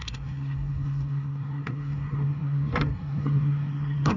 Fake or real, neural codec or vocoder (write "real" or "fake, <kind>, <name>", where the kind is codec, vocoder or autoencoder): fake, codec, SNAC